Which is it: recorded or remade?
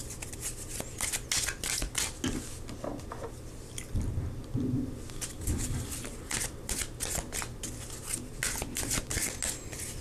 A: recorded